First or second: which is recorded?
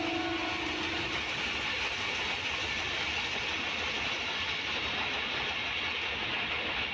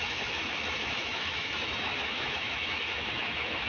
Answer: first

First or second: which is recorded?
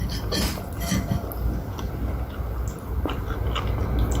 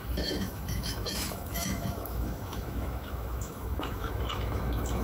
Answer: first